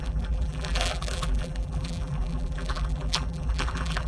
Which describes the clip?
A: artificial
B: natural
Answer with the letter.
A